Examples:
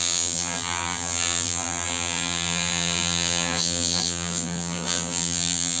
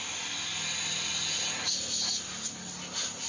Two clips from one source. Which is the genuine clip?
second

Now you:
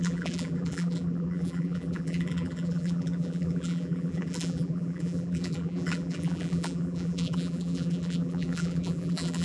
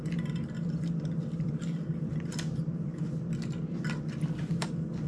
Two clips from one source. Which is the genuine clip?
second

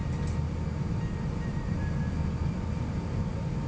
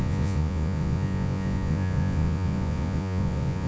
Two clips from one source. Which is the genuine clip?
first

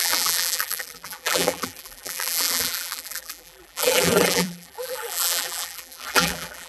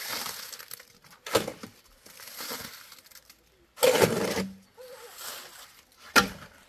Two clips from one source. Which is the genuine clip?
second